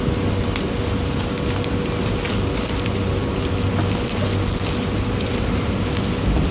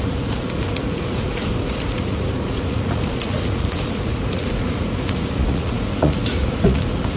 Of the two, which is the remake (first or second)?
second